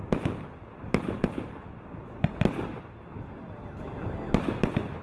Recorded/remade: recorded